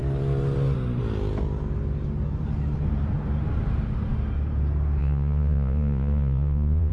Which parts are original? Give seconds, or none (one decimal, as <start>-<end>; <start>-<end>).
0.0-5.0